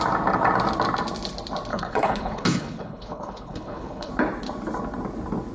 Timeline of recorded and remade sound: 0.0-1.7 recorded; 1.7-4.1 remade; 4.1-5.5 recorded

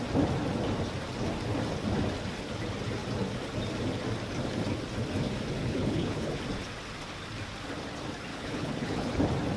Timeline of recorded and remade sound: 0.0-5.6 recorded; 5.6-6.4 remade; 6.4-8.3 recorded; 8.3-9.2 remade; 9.2-9.6 recorded

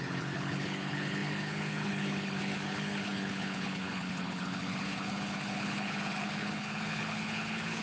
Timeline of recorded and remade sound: 0.0-7.8 remade

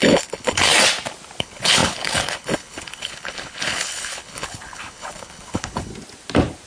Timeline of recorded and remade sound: 0.0-0.7 remade; 0.7-1.4 recorded; 1.4-5.9 remade; 5.9-6.7 recorded

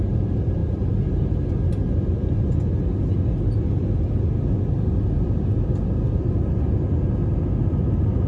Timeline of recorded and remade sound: 0.0-8.3 recorded

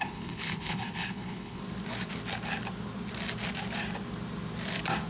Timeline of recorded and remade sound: 0.0-1.6 remade; 1.6-5.1 recorded